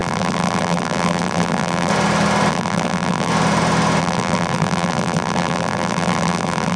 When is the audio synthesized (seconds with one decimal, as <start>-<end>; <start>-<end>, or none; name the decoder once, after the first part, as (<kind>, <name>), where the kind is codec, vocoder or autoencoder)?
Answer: 0.0-1.9 (vocoder, BigVGAN v2); 2.5-3.3; 4.0-6.8